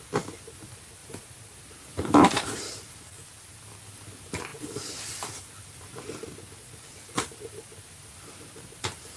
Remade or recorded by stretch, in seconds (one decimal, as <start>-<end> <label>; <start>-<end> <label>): 0.0-1.0 recorded; 1.0-2.8 remade; 2.8-8.0 recorded; 8.0-9.2 remade